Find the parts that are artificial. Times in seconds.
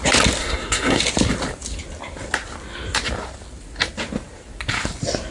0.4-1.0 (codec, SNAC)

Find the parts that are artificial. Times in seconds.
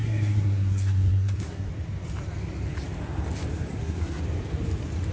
0.0-1.7 (codec, SNAC); 3.7-4.2